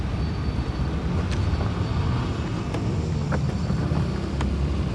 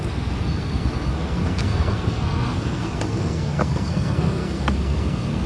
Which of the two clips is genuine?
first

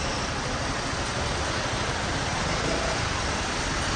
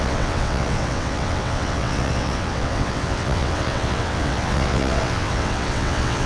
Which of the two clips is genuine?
first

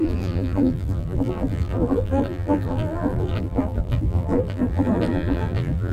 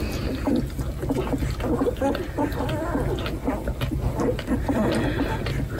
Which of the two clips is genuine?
second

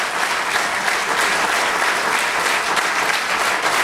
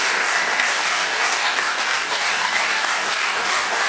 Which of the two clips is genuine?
first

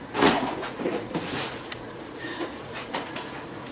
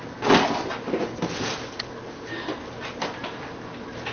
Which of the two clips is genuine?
second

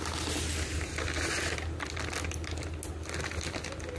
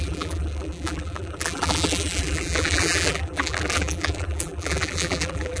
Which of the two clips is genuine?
first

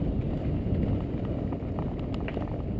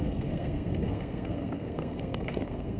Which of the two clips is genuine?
first